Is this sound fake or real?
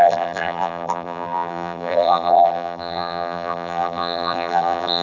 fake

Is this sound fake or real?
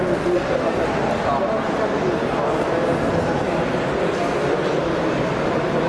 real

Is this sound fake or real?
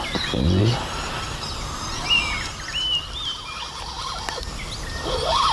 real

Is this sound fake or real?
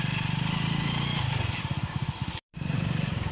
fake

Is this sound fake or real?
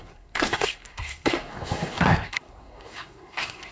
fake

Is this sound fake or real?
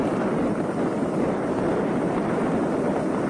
real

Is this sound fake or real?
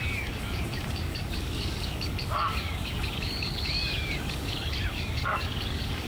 fake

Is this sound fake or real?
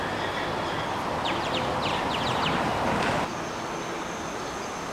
real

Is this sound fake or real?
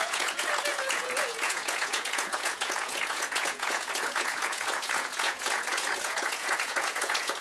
fake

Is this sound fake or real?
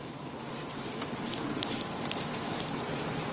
real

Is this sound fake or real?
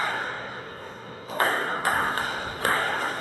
fake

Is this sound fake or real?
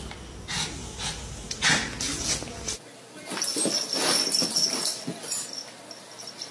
real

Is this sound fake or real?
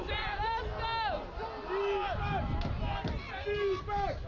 real